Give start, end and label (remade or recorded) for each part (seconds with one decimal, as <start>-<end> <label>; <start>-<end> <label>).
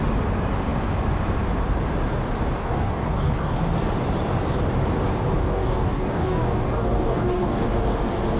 0.0-2.6 recorded; 2.6-3.6 remade; 3.6-5.4 recorded; 5.4-7.7 remade; 7.7-8.4 recorded